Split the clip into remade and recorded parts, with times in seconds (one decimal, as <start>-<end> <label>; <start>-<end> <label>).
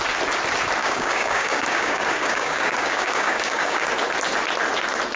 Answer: 0.0-0.8 recorded; 0.8-3.9 remade; 3.9-5.2 recorded